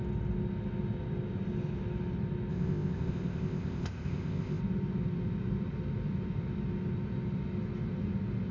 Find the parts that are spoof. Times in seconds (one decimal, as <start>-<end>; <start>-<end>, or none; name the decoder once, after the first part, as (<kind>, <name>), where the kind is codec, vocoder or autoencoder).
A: 2.5-4.6 (codec, ZipCodec)